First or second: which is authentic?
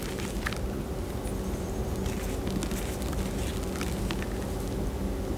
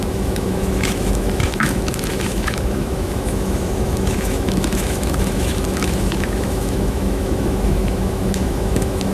first